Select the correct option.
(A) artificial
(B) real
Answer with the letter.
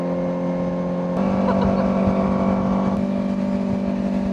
B